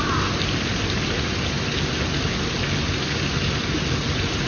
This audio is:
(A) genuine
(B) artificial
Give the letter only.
A